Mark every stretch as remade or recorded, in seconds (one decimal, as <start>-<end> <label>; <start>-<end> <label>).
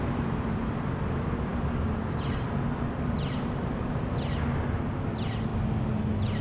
0.0-6.4 recorded